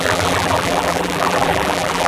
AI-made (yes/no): yes